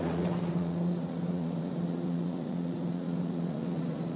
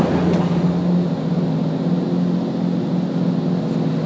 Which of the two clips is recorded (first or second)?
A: second